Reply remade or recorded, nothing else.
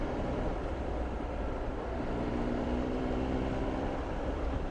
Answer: remade